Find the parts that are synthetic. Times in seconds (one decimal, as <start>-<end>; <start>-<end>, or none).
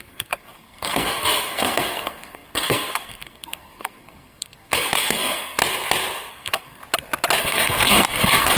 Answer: 0.0-5.6; 6.3-6.8; 7.4-8.6